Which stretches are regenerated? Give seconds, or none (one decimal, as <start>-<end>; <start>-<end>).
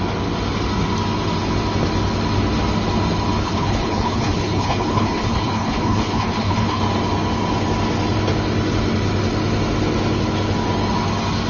3.4-6.8